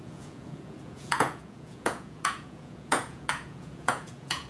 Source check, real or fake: fake